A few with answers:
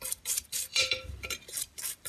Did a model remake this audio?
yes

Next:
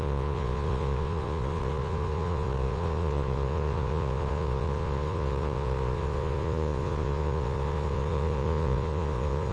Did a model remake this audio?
yes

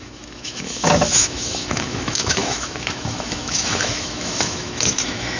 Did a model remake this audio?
yes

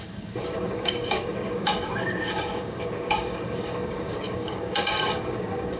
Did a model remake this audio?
yes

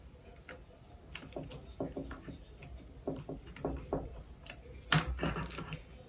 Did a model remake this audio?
no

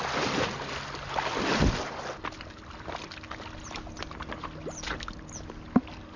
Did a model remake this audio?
no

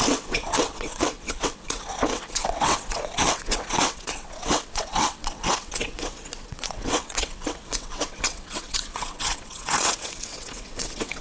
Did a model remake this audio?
yes